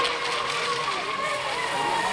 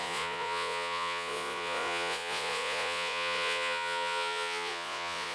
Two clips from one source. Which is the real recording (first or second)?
first